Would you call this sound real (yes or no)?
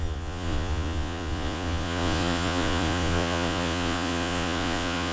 no